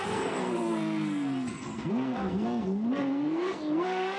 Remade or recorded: remade